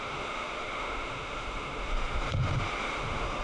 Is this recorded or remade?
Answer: remade